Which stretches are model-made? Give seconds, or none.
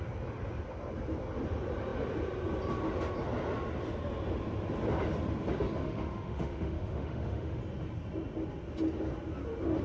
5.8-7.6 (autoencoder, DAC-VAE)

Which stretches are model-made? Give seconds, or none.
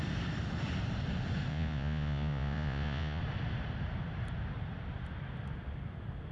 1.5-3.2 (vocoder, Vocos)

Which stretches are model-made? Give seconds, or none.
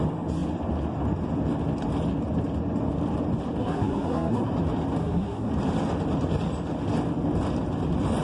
3.6-4.5 (codec, SNAC); 5.0-5.5